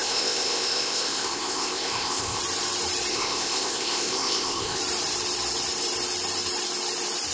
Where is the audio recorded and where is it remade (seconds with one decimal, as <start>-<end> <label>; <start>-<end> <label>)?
0.0-2.4 remade; 2.4-3.1 recorded; 3.1-4.8 remade; 4.8-7.3 recorded